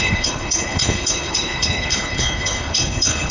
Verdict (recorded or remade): remade